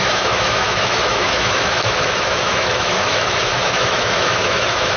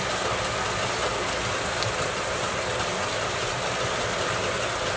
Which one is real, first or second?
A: second